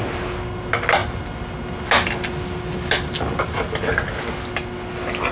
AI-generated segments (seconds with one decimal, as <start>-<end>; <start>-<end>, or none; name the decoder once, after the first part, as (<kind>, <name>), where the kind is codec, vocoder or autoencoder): none

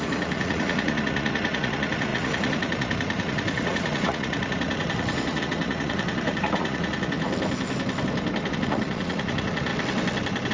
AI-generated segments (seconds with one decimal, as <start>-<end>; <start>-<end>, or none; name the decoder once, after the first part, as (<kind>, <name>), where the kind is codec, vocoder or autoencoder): 0.0-7.3 (vocoder, Vocos); 8.5-9.7

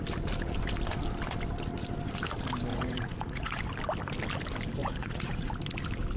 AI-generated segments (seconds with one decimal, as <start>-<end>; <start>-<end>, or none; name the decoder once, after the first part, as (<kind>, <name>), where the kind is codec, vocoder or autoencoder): 2.7-3.6 (vocoder, Vocos); 4.8-5.5

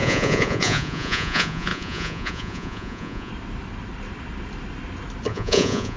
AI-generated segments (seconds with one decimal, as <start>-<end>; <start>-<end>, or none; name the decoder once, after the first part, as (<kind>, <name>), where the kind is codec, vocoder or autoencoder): 0.0-3.3 (vocoder, Vocos); 5.3-6.0

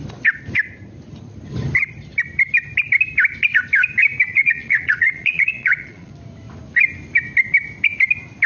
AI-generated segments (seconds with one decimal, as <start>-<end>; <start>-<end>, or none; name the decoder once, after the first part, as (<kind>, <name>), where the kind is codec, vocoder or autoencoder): 4.3-6.1 (vocoder, Vocos)